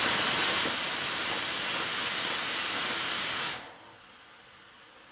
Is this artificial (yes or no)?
no